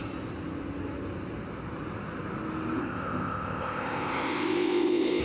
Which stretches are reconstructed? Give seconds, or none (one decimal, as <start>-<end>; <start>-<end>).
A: 2.8-5.2